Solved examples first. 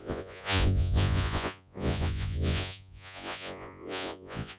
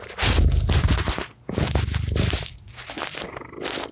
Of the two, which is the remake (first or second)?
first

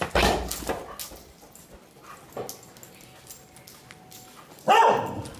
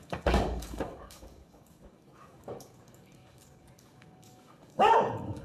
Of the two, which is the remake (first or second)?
second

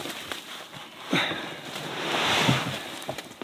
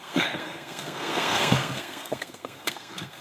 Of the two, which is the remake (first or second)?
second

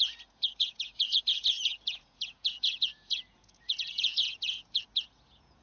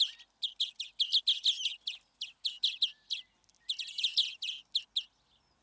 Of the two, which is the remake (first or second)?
first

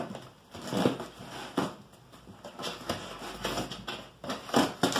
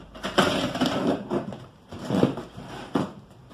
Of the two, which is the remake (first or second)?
second